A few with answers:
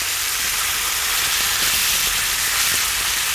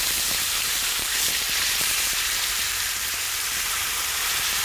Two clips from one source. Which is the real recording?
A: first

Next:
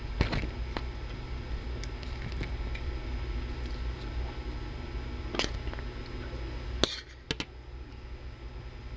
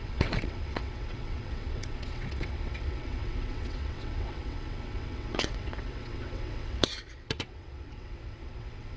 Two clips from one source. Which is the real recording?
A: first